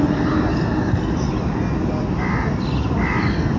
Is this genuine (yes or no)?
yes